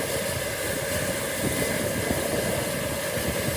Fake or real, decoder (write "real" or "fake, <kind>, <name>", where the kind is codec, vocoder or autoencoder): real